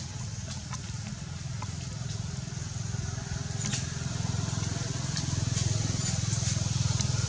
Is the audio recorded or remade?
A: recorded